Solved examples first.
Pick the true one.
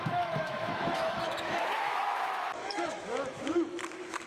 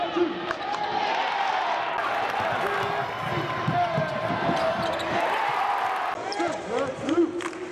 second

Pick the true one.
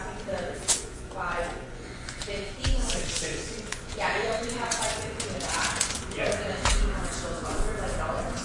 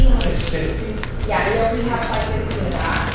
second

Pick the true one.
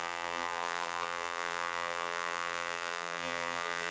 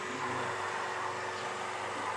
second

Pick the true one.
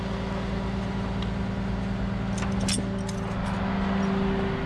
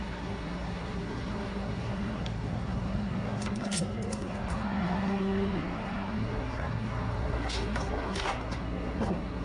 first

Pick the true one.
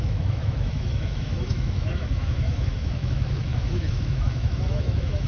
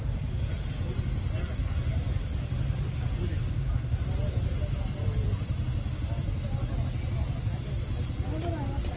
second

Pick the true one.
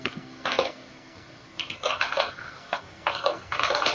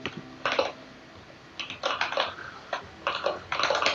second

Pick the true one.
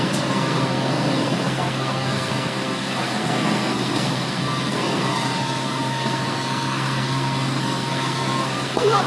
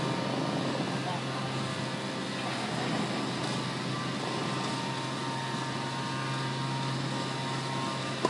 second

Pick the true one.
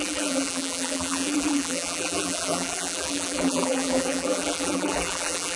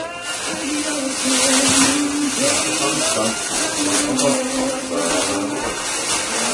second